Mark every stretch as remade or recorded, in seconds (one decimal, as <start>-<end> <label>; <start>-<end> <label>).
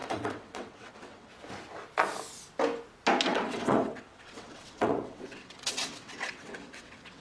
0.0-1.3 remade; 1.3-3.3 recorded; 3.3-7.2 remade